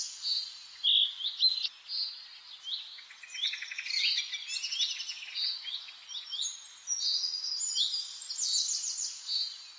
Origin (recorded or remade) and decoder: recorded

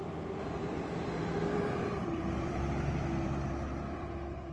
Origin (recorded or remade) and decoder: remade, vocoder, BigVGAN v2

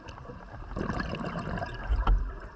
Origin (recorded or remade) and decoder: remade, vocoder, BigVGAN v2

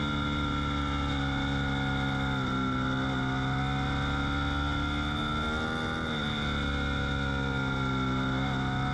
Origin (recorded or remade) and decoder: recorded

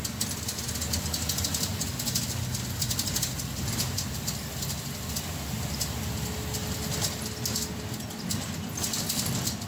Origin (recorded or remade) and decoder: recorded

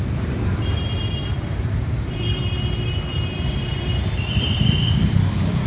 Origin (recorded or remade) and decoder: remade, vocoder, BigVGAN v2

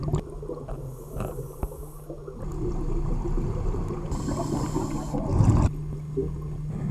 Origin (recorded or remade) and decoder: recorded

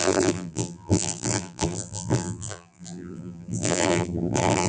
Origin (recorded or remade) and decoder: remade, vocoder, BigVGAN v2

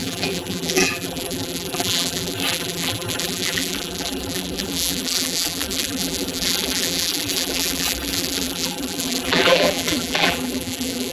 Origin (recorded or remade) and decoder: remade, vocoder, BigVGAN v2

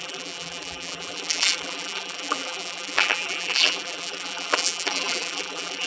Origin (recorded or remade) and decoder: remade, vocoder, BigVGAN v2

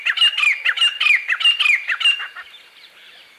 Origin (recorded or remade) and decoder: recorded